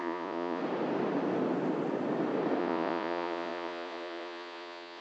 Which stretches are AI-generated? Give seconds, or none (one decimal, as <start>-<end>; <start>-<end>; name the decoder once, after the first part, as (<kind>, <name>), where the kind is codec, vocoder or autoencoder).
0.0-0.6 (vocoder, Vocos); 2.6-5.0